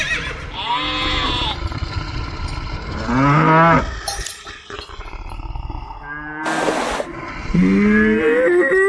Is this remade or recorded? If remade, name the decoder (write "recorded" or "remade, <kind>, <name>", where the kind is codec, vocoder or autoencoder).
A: recorded